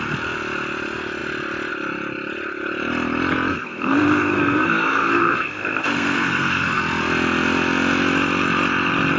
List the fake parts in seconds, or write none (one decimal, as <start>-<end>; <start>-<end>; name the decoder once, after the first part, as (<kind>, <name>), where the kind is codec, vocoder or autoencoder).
3.5-6.8 (codec, SNAC)